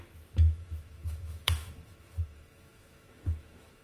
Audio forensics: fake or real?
fake